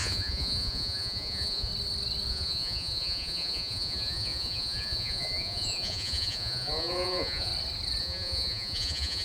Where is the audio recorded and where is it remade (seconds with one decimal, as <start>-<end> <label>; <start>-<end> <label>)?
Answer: 0.0-1.7 remade; 1.7-2.3 recorded; 2.3-7.5 remade; 7.5-8.0 recorded; 8.0-9.2 remade